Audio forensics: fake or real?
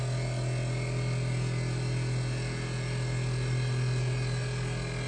real